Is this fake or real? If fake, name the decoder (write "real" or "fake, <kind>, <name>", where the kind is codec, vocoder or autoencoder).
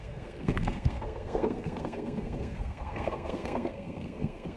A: fake, codec, SNAC